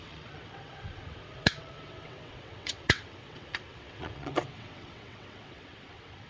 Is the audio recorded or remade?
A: remade